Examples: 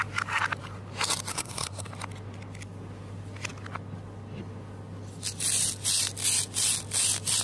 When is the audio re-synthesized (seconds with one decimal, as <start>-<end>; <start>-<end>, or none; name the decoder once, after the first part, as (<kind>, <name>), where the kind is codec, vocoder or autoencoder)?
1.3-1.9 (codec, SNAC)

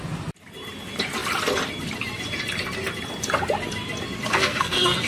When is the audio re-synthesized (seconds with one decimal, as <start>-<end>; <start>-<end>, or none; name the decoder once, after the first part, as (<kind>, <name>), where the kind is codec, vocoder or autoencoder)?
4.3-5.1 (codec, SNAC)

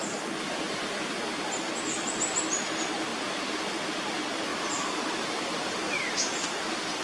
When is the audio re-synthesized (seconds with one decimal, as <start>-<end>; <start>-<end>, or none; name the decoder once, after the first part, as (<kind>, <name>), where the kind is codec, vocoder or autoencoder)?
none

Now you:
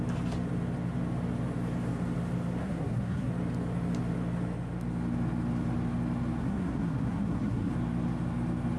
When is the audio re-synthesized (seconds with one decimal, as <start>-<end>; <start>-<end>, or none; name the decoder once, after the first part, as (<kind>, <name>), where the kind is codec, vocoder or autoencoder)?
2.6-3.3 (codec, SNAC); 6.4-7.7

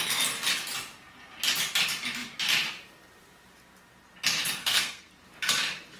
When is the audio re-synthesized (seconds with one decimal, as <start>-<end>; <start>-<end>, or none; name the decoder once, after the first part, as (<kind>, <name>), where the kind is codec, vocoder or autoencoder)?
4.6-5.1 (codec, SNAC)